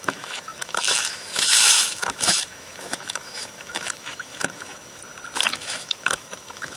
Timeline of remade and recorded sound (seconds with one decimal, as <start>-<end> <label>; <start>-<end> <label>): 0.0-5.0 remade; 5.0-5.5 recorded; 5.5-6.8 remade